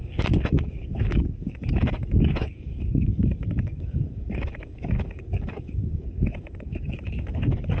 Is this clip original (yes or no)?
no